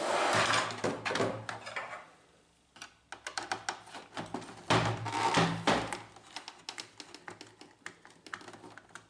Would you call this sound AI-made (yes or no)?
no